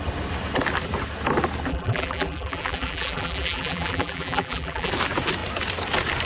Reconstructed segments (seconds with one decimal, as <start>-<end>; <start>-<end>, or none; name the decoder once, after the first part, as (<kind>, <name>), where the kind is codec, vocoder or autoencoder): 1.7-4.9 (vocoder, BigVGAN v2)